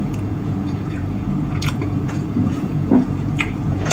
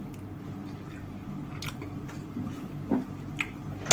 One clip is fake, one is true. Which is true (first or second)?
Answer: second